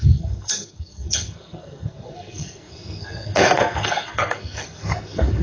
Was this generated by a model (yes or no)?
yes